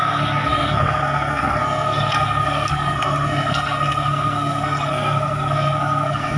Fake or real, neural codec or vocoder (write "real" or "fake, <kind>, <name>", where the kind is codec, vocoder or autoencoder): fake, codec, SNAC